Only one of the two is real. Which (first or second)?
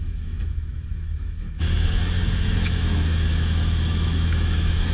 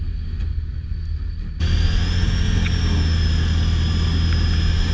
second